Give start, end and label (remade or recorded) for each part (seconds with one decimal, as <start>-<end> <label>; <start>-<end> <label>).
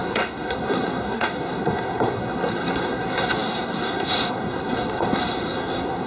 0.0-6.1 remade